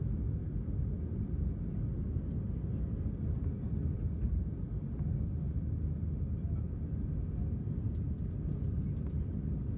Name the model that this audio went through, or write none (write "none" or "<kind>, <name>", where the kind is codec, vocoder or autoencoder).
none